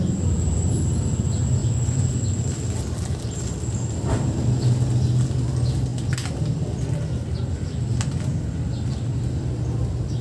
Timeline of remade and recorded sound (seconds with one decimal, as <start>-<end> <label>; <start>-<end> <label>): 0.0-1.6 recorded; 1.6-2.2 remade; 2.2-10.2 recorded